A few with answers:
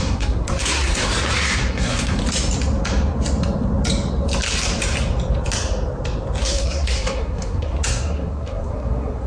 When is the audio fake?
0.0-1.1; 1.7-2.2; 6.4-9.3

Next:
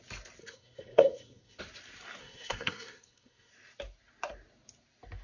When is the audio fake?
0.4-1.6; 2.2-3.5

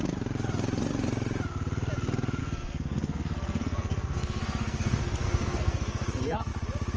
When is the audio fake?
2.4-6.5

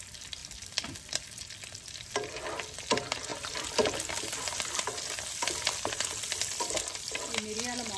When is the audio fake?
none

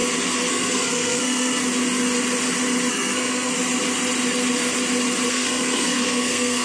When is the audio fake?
0.5-1.6; 2.9-3.5; 5.3-6.6

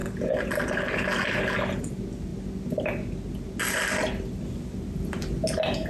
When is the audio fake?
none

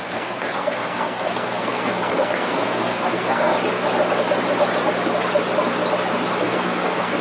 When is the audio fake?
0.0-3.5; 6.4-7.2